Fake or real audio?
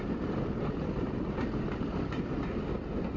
real